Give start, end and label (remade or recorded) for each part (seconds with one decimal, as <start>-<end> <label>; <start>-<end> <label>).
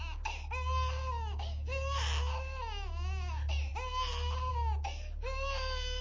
0.0-6.0 recorded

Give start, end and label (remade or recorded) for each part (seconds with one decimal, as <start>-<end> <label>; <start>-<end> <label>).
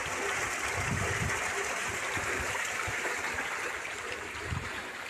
0.0-1.8 recorded; 1.8-5.1 remade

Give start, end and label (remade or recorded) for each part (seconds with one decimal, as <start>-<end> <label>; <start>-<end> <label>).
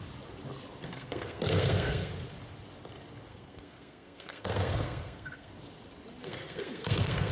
0.0-0.8 recorded; 0.8-2.1 remade; 2.1-3.3 recorded; 3.3-5.5 remade; 5.5-6.2 recorded; 6.2-7.3 remade